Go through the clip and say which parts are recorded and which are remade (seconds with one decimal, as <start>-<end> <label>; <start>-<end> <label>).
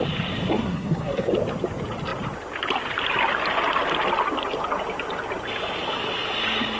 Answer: 0.0-0.5 recorded; 0.5-1.3 remade; 1.3-6.8 recorded